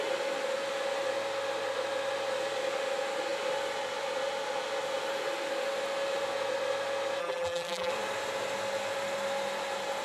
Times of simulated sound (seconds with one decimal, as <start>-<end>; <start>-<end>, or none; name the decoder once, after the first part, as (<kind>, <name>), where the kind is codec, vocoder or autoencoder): 7.2-7.9 (vocoder, BigVGAN v2)